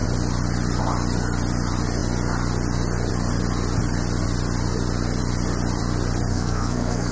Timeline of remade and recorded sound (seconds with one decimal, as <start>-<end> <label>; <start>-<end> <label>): 0.0-6.3 recorded; 6.3-7.1 remade